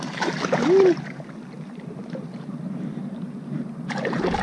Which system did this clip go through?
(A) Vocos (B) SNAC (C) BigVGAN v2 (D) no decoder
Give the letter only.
C